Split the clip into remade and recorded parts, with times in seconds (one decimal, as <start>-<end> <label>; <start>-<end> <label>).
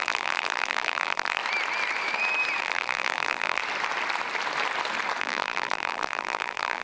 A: 0.0-1.4 remade; 1.4-2.6 recorded; 2.6-3.6 remade; 3.6-5.2 recorded; 5.2-6.8 remade